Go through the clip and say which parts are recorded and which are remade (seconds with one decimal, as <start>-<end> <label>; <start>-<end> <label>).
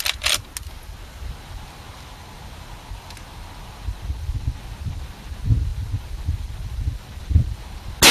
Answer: 0.0-8.1 recorded